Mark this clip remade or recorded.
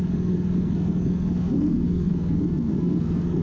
remade